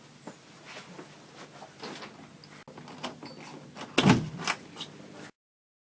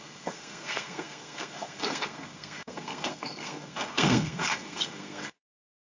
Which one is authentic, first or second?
first